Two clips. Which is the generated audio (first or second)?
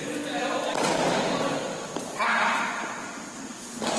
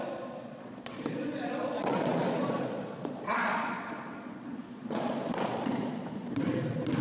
second